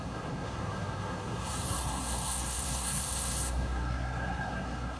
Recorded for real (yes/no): no